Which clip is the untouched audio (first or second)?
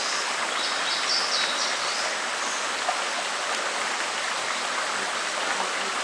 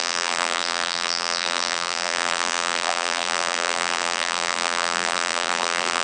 first